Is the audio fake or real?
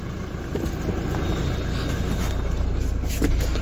real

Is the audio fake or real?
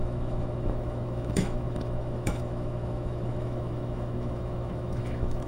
fake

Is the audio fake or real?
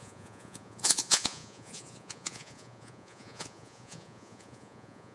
fake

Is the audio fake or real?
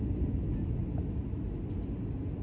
real